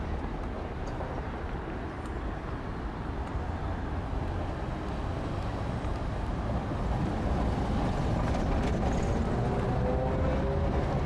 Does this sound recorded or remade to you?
recorded